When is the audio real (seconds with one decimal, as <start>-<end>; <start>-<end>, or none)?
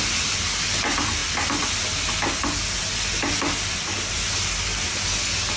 0.0-5.6